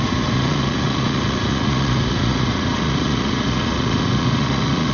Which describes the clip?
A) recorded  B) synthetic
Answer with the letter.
B